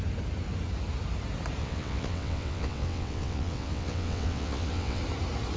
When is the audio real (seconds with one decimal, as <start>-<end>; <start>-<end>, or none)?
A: 0.0-1.6; 5.0-5.6